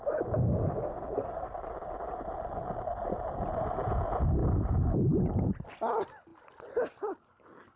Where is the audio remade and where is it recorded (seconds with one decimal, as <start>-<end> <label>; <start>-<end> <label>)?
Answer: 0.0-7.8 recorded